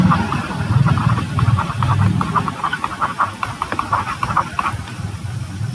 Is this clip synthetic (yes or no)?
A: no